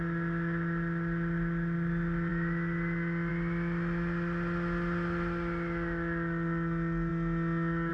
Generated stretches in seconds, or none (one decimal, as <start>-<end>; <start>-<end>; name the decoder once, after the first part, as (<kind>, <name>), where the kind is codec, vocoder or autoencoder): none